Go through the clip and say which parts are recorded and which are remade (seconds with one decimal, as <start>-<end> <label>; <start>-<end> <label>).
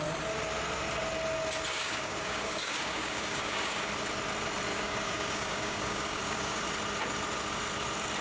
0.0-1.7 recorded; 1.7-3.9 remade; 3.9-4.7 recorded; 4.7-6.6 remade; 6.6-8.2 recorded